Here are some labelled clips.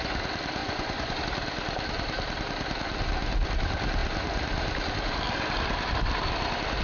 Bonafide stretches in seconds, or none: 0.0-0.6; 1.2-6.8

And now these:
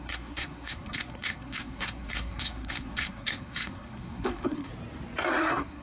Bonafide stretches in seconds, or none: 4.7-5.3

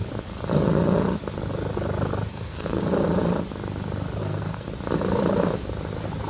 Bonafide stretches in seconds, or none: 0.0-2.3; 2.8-4.2; 4.7-6.3